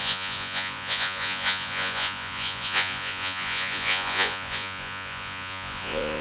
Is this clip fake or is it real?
fake